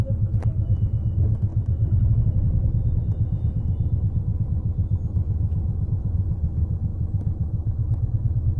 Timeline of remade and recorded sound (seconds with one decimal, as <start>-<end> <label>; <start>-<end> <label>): 0.0-8.6 recorded